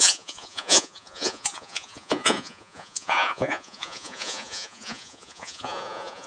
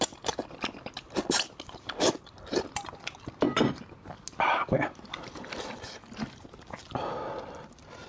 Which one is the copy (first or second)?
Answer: first